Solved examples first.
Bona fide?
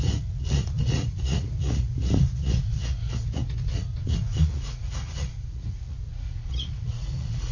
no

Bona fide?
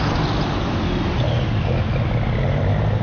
yes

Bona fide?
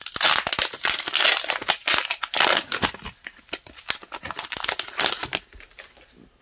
yes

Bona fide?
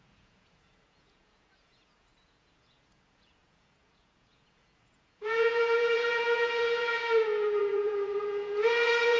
no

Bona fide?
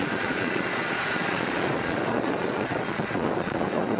no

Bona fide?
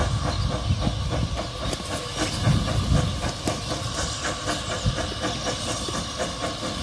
yes